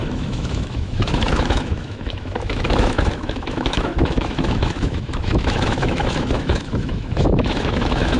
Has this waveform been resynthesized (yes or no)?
yes